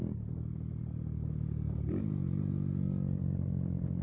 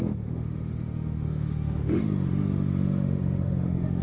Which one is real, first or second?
first